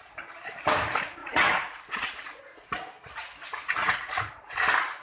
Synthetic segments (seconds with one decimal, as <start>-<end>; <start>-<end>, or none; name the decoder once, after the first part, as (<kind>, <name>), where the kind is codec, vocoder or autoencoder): 1.2-2.4 (vocoder, Vocos); 3.8-4.4